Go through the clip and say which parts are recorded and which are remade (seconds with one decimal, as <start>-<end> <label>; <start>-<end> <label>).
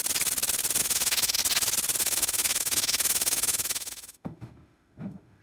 0.0-0.8 recorded; 0.8-1.4 remade; 1.4-2.0 recorded; 2.0-5.4 remade